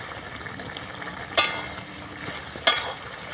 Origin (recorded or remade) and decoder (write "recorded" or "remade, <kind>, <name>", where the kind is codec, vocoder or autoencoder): recorded